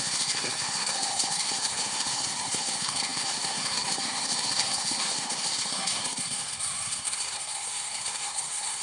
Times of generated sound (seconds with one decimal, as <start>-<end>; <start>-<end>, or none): 0.0-8.8